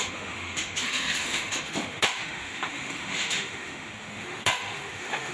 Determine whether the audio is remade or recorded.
remade